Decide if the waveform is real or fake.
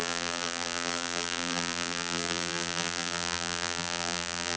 fake